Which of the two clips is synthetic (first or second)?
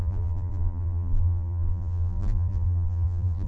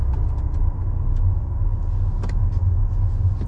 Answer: first